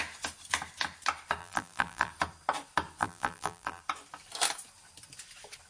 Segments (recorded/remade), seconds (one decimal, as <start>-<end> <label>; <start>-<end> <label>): 0.0-1.4 recorded; 1.4-2.1 remade; 2.1-3.0 recorded; 3.0-3.8 remade; 3.8-5.7 recorded